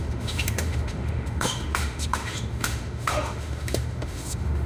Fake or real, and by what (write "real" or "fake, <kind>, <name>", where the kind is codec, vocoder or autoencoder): fake, autoencoder, DAC-VAE